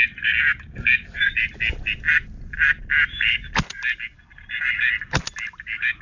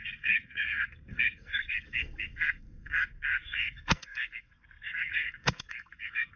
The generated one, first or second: second